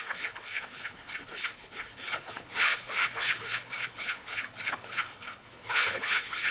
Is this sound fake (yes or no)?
yes